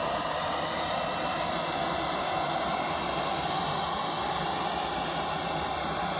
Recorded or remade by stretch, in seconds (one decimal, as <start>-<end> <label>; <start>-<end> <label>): 0.0-6.2 recorded